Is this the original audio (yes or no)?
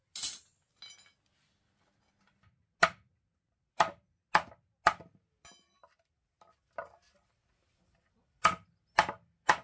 yes